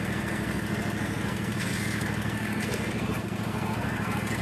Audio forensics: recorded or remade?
remade